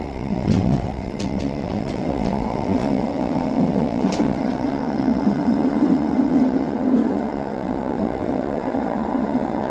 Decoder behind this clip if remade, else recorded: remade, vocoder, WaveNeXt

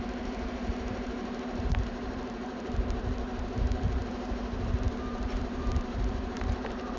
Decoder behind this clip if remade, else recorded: remade, vocoder, BigVGAN v2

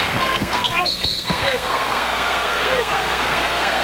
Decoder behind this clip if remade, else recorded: remade, codec, SNAC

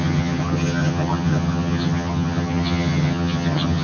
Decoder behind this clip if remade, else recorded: remade, vocoder, HiFi-GAN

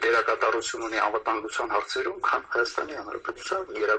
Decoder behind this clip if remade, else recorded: remade, vocoder, BigVGAN v2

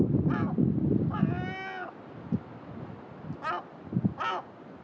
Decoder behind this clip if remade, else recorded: recorded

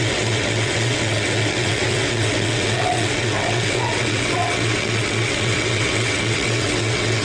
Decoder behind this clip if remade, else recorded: remade, vocoder, WaveNeXt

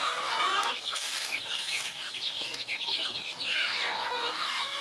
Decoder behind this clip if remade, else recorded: remade, codec, DAC